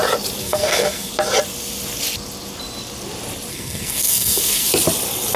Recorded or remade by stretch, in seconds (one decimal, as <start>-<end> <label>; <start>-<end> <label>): 0.0-0.4 recorded; 0.4-1.1 remade; 1.1-3.5 recorded; 3.5-4.7 remade; 4.7-5.4 recorded